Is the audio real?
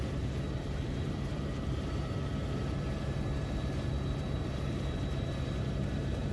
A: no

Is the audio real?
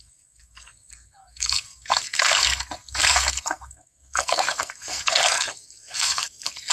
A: no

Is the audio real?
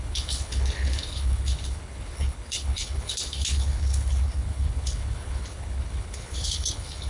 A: no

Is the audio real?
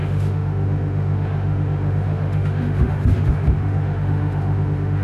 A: no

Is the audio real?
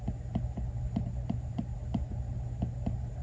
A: yes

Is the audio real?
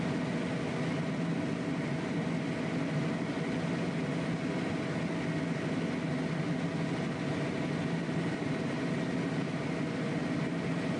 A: yes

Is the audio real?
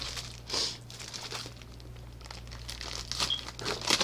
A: yes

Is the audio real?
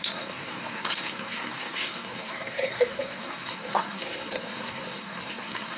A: no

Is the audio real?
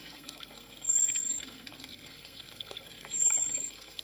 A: no